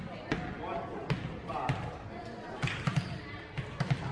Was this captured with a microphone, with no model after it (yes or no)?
yes